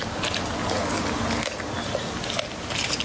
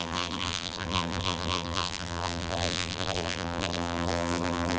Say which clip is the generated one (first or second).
second